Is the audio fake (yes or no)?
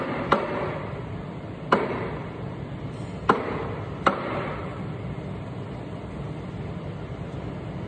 yes